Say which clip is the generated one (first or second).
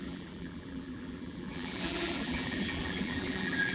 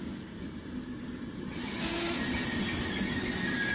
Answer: first